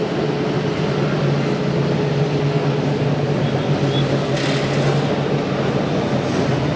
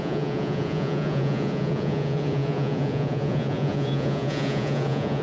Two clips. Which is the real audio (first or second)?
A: first